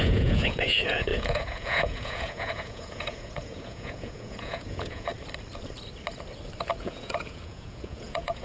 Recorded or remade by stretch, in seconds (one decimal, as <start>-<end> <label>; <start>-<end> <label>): 0.0-5.1 remade; 5.1-6.6 recorded; 6.6-8.4 remade